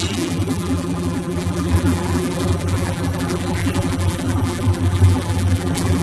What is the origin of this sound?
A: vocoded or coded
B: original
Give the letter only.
A